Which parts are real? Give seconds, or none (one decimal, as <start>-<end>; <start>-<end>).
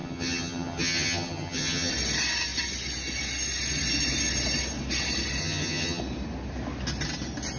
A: 1.9-5.4; 6.0-7.6